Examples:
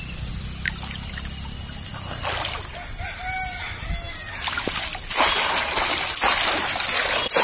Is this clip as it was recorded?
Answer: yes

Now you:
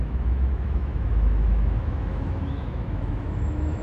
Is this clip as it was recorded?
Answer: no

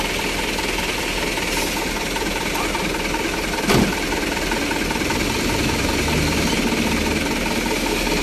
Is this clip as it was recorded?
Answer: yes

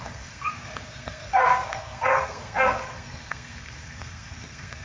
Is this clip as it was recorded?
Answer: no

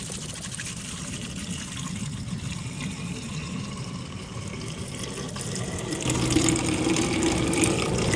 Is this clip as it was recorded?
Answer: yes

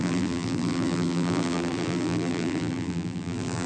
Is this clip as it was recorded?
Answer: no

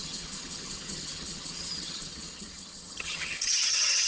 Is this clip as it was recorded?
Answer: no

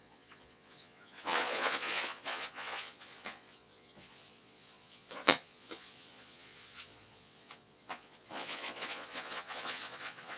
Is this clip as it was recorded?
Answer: no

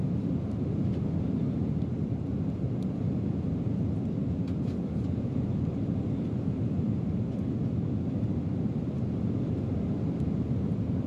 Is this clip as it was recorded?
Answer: yes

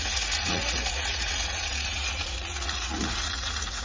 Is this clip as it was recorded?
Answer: no